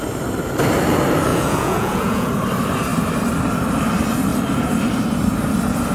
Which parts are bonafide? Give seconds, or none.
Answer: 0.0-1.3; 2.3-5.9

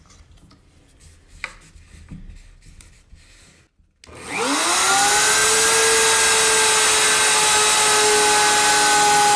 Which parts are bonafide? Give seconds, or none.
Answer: 0.0-9.4

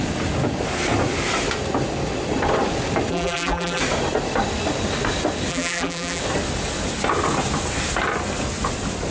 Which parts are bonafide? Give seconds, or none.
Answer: 0.0-3.1; 3.8-5.5; 6.2-9.1